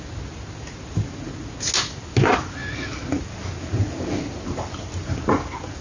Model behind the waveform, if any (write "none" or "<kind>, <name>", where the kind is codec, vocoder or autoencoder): none